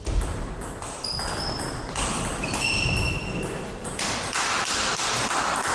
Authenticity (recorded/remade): recorded